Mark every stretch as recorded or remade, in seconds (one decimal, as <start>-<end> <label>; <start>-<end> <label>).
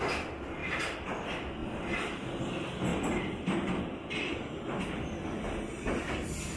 0.0-0.6 recorded; 0.6-1.1 remade; 1.1-1.6 recorded; 1.6-2.2 remade; 2.2-2.9 recorded; 2.9-4.5 remade; 4.5-6.6 recorded